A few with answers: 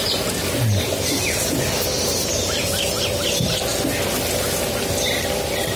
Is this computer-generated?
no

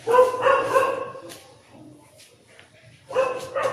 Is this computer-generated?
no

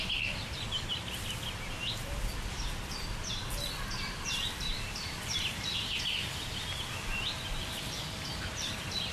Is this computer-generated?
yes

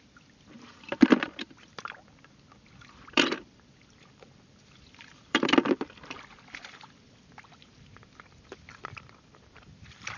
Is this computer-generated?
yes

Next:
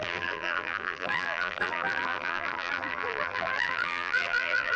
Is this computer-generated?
yes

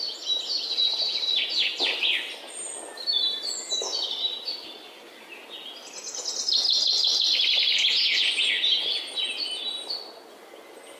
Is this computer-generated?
no